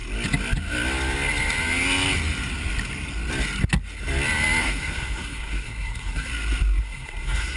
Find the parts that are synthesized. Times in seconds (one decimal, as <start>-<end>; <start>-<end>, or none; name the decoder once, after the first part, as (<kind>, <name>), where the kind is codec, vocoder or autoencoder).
4.6-6.3 (codec, SNAC); 6.8-7.6